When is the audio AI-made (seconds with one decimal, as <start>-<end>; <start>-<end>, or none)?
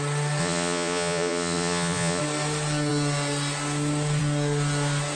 0.4-2.2